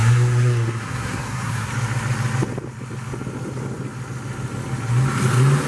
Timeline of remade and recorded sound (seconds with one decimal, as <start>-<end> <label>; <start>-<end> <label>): 0.0-1.7 remade; 1.7-5.7 recorded